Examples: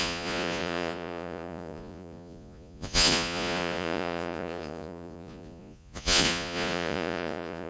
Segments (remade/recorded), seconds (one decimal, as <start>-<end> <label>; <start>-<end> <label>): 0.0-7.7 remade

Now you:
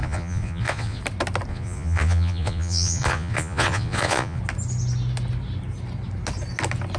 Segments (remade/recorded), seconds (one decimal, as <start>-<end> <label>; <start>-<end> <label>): 0.0-1.0 remade; 1.0-1.5 recorded; 1.5-4.4 remade; 4.4-7.0 recorded

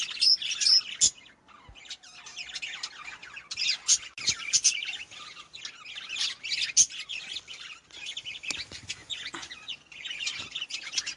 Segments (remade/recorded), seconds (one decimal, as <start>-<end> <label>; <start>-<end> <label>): 0.0-9.0 recorded; 9.0-10.4 remade; 10.4-11.2 recorded

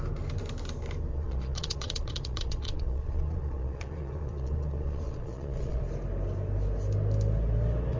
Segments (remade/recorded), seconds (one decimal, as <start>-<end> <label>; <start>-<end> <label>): 0.0-1.1 recorded; 1.1-5.8 remade; 5.8-8.0 recorded

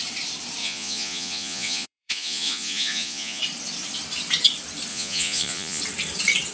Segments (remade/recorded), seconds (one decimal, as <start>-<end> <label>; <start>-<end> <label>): 0.0-0.6 recorded; 0.6-3.4 remade; 3.4-4.9 recorded; 4.9-5.8 remade; 5.8-6.5 recorded

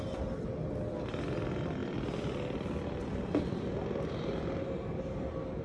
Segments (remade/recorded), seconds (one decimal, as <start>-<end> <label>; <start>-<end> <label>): 0.0-5.6 recorded

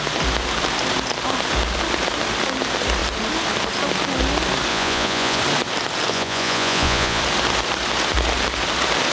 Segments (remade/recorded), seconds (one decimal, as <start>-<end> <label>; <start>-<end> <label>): 0.0-4.7 recorded; 4.7-5.4 remade; 5.4-6.1 recorded; 6.1-7.2 remade; 7.2-9.1 recorded

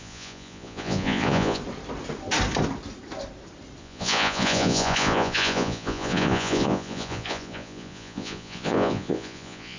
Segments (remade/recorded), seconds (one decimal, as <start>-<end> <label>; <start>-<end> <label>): 0.0-1.6 remade; 1.6-3.8 recorded; 3.8-9.8 remade